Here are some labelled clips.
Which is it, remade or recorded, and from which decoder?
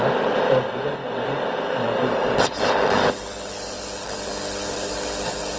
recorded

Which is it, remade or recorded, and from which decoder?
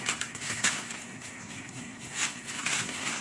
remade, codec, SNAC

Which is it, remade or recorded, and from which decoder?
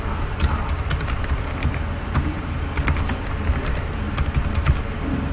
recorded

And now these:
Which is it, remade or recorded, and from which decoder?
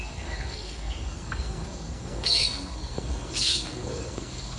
remade, codec, SNAC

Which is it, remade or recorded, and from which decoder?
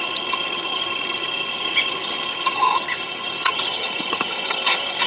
remade, vocoder, HiFi-GAN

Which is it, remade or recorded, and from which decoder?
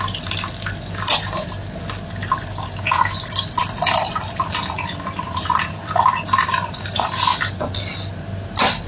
recorded